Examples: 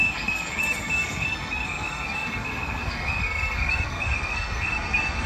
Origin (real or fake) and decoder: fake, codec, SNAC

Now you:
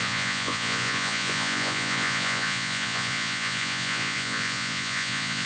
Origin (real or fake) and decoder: fake, vocoder, Vocos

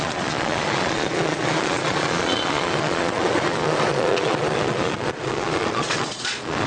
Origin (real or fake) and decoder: fake, vocoder, Vocos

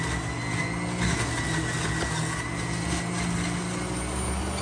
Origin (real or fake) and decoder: real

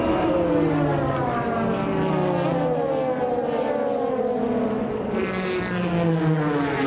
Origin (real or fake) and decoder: real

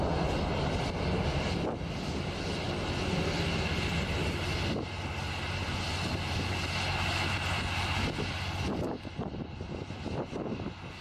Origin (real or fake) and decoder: real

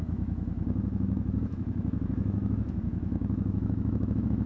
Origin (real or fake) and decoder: fake, autoencoder, DAC-VAE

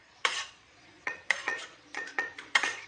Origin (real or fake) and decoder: fake, vocoder, Vocos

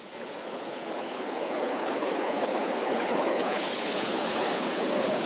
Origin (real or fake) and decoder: fake, codec, HILCodec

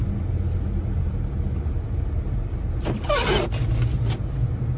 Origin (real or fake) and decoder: real